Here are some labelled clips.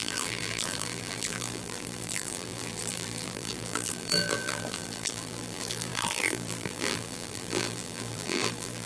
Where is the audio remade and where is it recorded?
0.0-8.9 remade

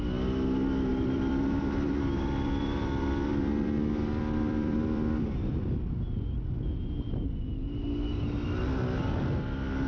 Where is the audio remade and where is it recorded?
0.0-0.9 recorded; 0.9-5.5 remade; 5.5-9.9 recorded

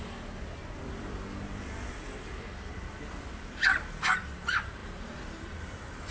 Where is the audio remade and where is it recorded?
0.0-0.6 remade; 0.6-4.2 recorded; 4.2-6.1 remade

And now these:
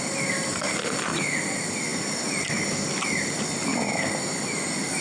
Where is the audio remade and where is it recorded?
0.0-1.9 remade; 1.9-2.9 recorded; 2.9-3.7 remade; 3.7-5.0 recorded